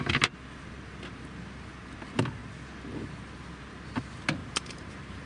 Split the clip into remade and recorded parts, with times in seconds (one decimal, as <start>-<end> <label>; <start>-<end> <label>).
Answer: 0.0-4.4 recorded; 4.4-5.3 remade